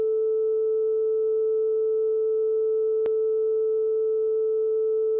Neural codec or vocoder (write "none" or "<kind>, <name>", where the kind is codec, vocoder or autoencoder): none